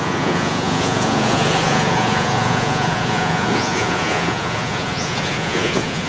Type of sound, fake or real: fake